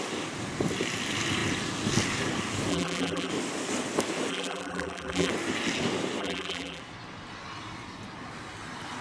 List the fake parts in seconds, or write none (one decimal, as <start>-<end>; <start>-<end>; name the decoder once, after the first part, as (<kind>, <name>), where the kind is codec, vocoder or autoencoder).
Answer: 2.7-3.3 (vocoder, BigVGAN v2); 4.3-5.3; 6.2-6.8